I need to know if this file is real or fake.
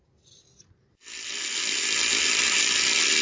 real